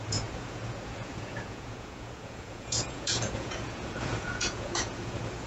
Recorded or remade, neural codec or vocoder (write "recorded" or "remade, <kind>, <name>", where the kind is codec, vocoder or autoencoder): remade, vocoder, Vocos